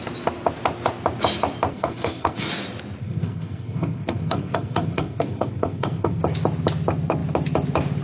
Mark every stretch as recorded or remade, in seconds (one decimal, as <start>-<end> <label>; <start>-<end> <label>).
0.0-1.7 recorded; 1.7-2.5 remade; 2.5-3.0 recorded; 3.0-6.2 remade; 6.2-8.0 recorded